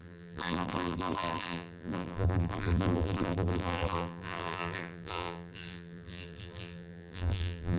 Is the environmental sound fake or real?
fake